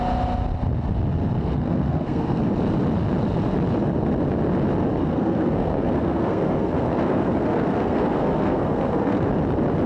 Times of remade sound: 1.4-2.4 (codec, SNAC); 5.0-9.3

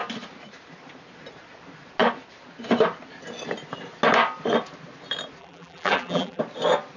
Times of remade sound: 5.4-6.4 (vocoder, BigVGAN v2)

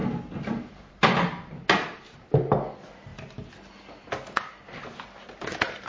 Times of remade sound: none

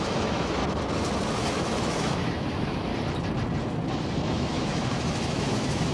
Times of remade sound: 0.0-0.6 (autoencoder, DAC-VAE); 1.4-2.9; 4.3-5.9

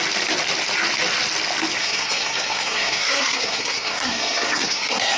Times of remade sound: 1.8-5.2 (codec, SNAC)

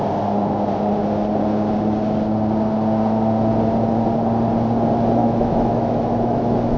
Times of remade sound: 5.2-6.8 (autoencoder, DAC-VAE)